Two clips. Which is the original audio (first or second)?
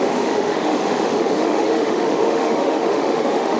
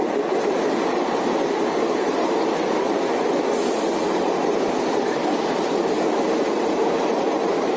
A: second